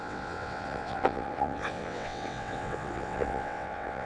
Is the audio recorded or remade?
remade